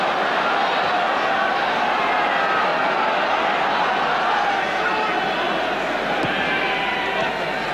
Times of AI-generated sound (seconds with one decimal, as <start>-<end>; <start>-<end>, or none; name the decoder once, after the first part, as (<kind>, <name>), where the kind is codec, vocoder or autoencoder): 2.7-4.8 (vocoder, BigVGAN v2)